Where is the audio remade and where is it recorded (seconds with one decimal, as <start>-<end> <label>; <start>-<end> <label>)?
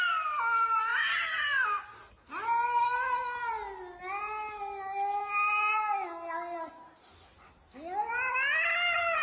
0.0-9.2 recorded